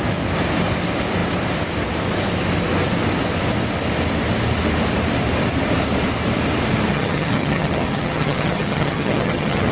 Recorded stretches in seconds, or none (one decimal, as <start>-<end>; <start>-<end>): 0.0-6.9